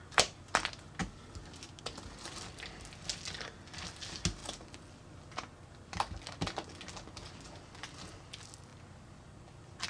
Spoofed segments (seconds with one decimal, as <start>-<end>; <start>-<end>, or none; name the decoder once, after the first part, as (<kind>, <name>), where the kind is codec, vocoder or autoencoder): none